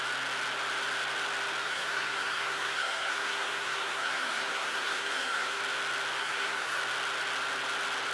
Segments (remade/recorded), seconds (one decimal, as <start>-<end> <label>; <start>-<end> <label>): 0.0-1.6 recorded; 1.6-5.6 remade; 5.6-6.2 recorded; 6.2-6.8 remade; 6.8-8.1 recorded